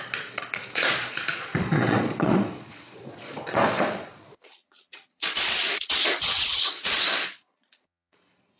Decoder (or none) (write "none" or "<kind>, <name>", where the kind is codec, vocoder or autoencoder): vocoder, Vocos